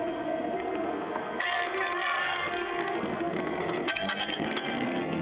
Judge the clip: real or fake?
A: fake